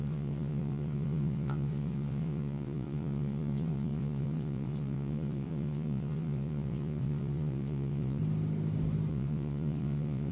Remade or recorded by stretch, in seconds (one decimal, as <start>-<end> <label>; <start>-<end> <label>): 0.0-8.2 remade; 8.2-9.1 recorded; 9.1-10.3 remade